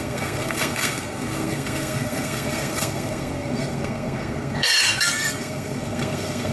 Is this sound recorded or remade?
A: remade